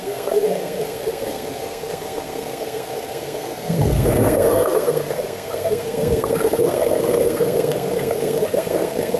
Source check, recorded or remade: remade